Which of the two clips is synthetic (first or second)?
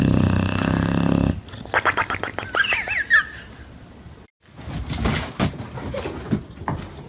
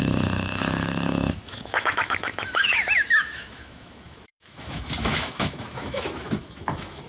second